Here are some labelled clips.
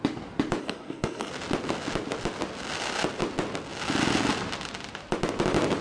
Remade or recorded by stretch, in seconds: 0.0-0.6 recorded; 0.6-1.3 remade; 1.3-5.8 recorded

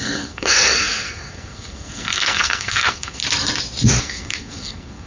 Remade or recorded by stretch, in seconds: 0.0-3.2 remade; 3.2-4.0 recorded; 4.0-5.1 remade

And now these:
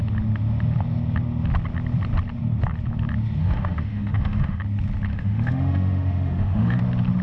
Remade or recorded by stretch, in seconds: 0.0-3.4 recorded; 3.4-4.6 remade; 4.6-5.1 recorded; 5.1-6.8 remade; 6.8-7.2 recorded

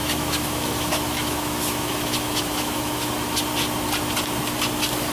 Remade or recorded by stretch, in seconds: 0.0-3.1 remade; 3.1-5.1 recorded

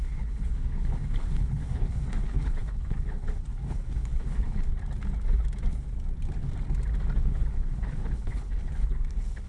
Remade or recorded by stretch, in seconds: 0.0-4.7 remade; 4.7-7.2 recorded; 7.2-9.5 remade